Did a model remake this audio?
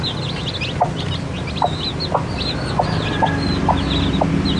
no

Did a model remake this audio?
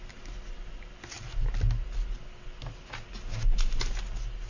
no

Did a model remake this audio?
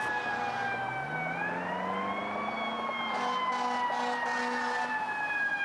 no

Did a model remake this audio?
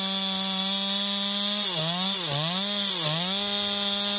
no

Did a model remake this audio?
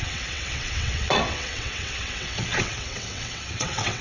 yes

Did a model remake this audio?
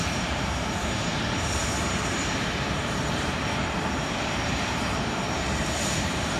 yes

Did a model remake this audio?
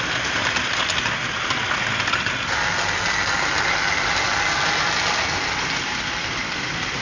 no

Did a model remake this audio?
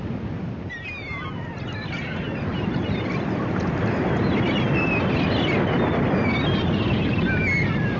no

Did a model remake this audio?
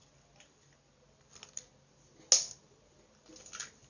no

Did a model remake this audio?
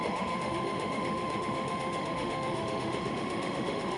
yes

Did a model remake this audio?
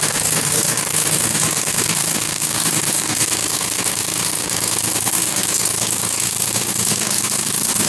yes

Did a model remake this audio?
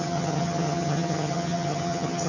yes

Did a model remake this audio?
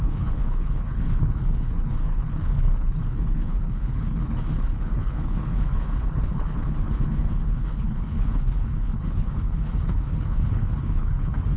yes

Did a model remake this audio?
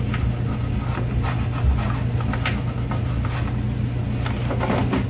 no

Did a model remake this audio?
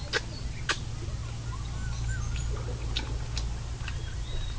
no